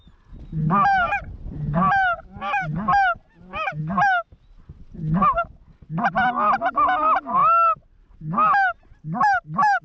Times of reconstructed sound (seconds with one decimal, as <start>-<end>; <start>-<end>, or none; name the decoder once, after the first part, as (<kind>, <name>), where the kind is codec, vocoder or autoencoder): none